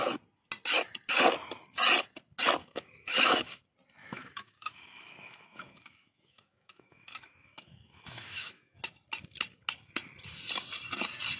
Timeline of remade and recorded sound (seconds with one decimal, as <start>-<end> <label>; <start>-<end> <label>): 0.0-2.6 recorded; 2.6-3.6 remade; 3.6-4.0 recorded; 4.0-8.8 remade; 8.8-11.4 recorded